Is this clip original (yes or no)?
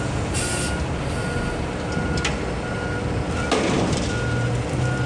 yes